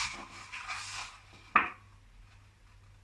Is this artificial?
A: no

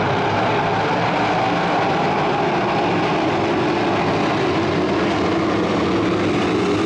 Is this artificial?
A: no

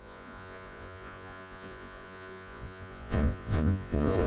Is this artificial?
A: yes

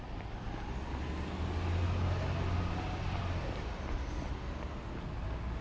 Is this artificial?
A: no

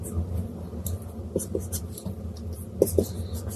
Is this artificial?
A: no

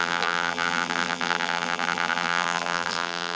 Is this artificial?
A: yes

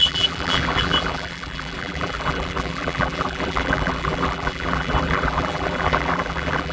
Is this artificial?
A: yes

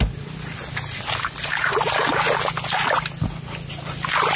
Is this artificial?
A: no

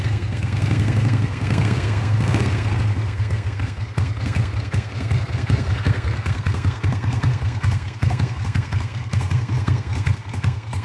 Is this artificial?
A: yes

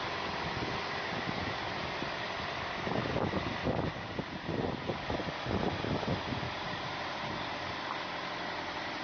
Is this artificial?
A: no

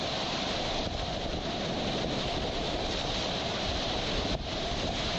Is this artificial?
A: yes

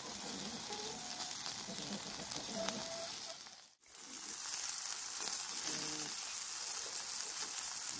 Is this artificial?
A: no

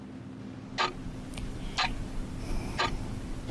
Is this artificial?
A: no